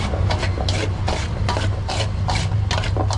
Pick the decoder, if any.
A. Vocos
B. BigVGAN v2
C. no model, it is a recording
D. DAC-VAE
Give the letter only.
C